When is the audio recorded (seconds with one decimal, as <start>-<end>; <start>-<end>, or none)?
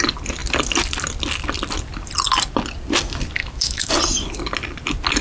0.0-3.4; 3.9-5.2